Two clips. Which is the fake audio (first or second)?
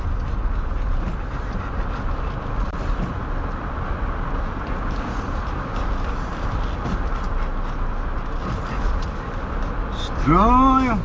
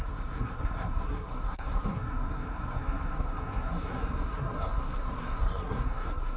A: second